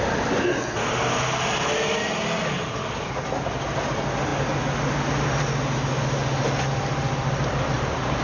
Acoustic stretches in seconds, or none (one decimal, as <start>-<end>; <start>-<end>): 0.0-8.2